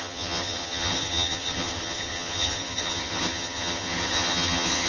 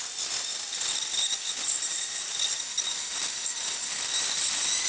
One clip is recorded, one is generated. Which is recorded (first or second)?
second